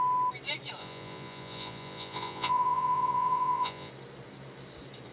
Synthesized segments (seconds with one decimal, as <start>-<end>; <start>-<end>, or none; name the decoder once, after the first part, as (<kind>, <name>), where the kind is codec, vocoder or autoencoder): 0.8-3.9 (vocoder, Vocos)